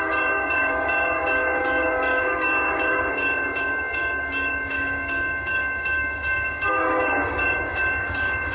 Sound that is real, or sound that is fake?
fake